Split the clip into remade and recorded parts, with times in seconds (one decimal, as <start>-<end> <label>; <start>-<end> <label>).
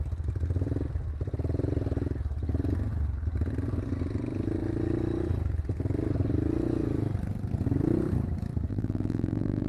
0.0-8.7 recorded; 8.7-9.7 remade